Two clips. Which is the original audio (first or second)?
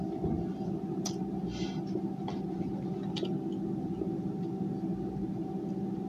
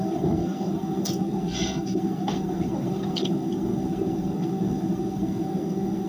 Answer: first